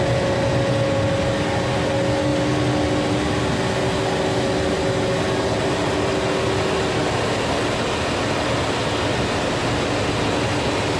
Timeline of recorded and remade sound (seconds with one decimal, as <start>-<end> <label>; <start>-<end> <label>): 0.0-11.0 recorded